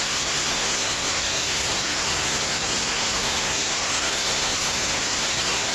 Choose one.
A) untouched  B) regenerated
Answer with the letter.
B